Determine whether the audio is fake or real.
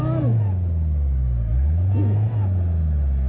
real